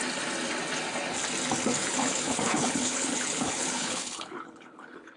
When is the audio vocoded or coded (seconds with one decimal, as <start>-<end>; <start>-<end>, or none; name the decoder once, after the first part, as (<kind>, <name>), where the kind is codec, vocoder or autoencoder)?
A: 1.8-5.2 (codec, HILCodec)

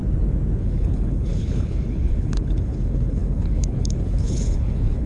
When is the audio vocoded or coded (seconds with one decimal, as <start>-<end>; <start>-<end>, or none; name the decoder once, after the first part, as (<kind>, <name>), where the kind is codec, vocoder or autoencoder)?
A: 0.6-5.1 (codec, HILCodec)

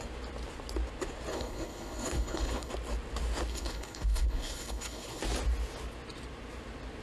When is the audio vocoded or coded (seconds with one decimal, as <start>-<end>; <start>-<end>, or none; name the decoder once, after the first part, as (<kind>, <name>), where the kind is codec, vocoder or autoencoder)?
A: 1.3-2.7 (codec, HILCodec); 3.5-5.2

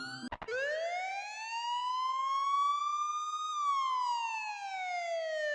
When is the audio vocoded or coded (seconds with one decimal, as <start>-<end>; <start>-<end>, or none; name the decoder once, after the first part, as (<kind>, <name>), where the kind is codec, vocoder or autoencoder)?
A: none

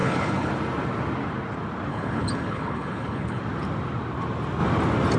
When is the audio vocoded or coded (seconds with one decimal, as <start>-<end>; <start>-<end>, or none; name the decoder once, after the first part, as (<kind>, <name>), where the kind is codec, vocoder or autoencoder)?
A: 0.0-0.5 (codec, HILCodec); 1.9-3.4

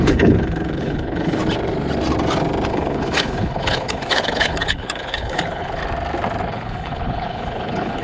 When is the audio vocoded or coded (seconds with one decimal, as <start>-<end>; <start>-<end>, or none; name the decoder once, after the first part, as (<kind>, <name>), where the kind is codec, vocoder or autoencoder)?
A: 0.0-1.4 (codec, HILCodec); 2.7-5.8; 6.5-8.0

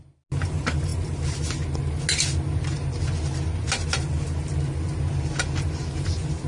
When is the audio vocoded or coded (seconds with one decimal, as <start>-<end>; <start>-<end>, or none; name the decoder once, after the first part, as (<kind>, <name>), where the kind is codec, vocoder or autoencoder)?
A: none

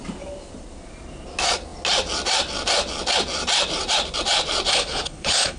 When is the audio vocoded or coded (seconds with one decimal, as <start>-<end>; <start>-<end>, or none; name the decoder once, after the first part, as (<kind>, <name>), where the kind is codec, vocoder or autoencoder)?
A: 4.7-5.6 (codec, HILCodec)